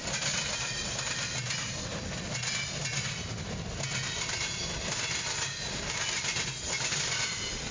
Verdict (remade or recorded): recorded